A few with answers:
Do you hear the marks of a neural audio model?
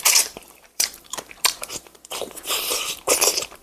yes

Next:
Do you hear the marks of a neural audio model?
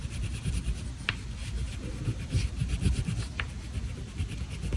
yes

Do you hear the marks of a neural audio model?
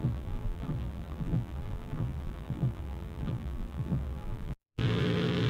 yes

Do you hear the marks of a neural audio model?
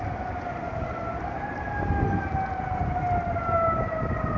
no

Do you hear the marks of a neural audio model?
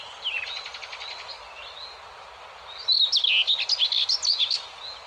no